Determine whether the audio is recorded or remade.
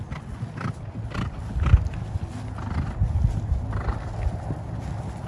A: recorded